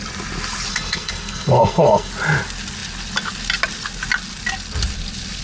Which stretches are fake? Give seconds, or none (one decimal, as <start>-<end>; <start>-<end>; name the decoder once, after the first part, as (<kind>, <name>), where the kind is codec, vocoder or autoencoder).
0.7-2.1 (codec, SNAC)